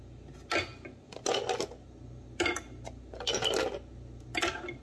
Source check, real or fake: real